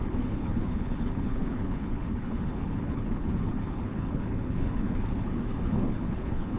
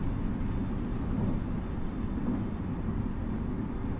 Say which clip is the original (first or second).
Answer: second